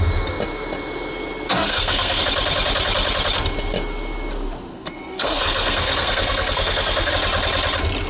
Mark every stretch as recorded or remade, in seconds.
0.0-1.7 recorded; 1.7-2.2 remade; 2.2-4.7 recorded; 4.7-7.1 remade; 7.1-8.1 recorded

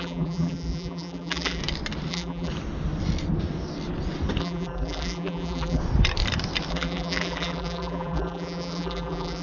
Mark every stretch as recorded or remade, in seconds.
0.0-1.6 remade; 1.6-2.1 recorded; 2.1-2.5 remade; 2.5-4.4 recorded; 4.4-5.8 remade; 5.8-6.7 recorded; 6.7-9.4 remade

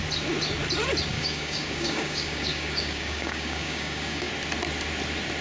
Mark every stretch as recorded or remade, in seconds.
0.0-1.1 recorded; 1.1-4.3 remade; 4.3-5.4 recorded

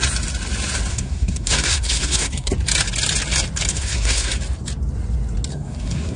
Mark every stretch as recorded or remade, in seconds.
0.0-0.9 recorded; 0.9-2.5 remade; 2.5-3.7 recorded; 3.7-4.3 remade; 4.3-5.5 recorded; 5.5-6.2 remade

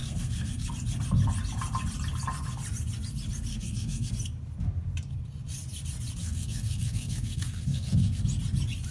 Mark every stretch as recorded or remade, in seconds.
0.0-0.7 remade; 0.7-3.5 recorded; 3.5-4.1 remade; 4.1-6.2 recorded; 6.2-8.2 remade; 8.2-8.9 recorded

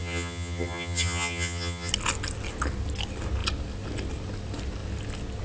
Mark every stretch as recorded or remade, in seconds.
0.0-1.9 remade; 1.9-5.4 recorded